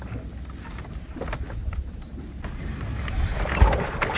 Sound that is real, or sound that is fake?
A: real